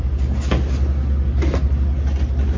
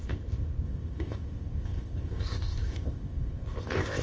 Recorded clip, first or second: first